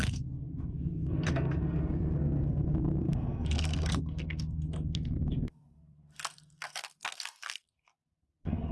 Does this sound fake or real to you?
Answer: fake